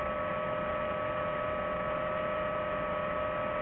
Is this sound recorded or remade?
recorded